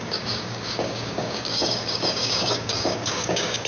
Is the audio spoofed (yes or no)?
yes